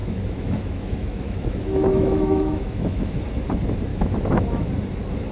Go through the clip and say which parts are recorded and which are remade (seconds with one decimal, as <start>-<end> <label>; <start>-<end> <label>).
0.0-3.2 remade; 3.2-3.9 recorded; 3.9-4.7 remade; 4.7-5.3 recorded